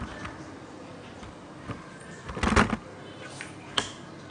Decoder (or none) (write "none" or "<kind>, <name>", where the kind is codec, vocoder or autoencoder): none